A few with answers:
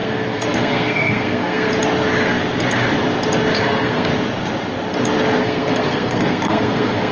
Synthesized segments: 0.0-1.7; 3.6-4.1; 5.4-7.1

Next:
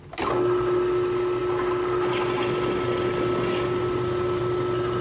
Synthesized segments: none

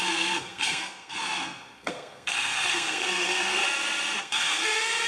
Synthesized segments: 0.0-3.6; 4.2-5.1

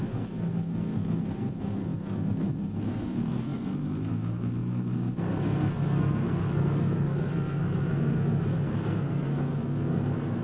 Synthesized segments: 0.0-10.4

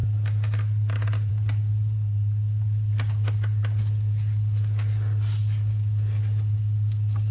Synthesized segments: none